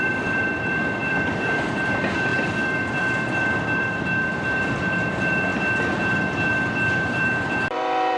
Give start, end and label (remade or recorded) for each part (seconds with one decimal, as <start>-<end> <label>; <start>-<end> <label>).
0.0-5.5 remade; 5.5-7.2 recorded; 7.2-8.2 remade